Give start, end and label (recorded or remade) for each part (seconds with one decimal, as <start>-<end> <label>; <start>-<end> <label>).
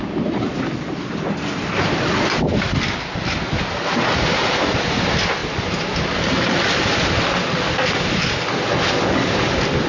0.0-9.9 recorded